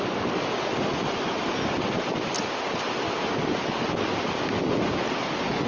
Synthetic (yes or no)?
no